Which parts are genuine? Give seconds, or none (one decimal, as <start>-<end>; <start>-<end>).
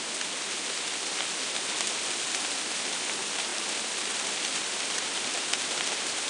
0.0-6.3